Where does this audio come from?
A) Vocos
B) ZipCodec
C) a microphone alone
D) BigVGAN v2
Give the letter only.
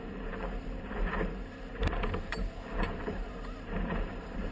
D